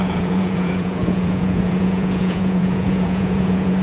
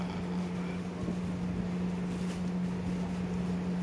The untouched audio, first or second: second